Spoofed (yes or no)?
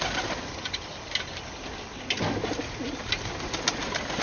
no